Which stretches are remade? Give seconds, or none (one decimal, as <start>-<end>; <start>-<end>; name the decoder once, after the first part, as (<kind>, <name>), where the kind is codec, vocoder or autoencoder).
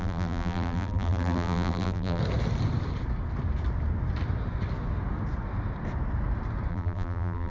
0.0-2.2 (vocoder, BigVGAN v2); 6.7-7.5